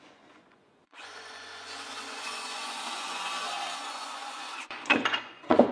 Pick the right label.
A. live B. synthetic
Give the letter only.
B